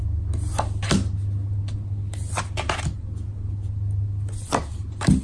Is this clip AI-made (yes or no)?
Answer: no